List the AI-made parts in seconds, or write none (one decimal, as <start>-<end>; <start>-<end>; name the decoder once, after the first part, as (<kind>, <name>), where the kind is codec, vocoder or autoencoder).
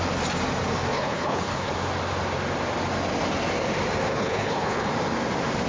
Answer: 0.9-1.7 (codec, HILCodec); 4.1-4.9